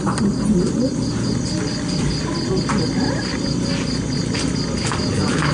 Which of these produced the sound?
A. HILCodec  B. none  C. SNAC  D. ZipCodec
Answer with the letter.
B